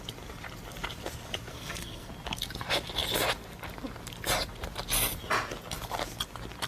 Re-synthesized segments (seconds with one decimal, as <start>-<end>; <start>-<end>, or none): 1.5-2.1